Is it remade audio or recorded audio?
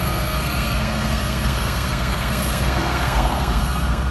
remade